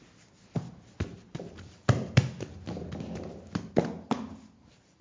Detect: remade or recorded recorded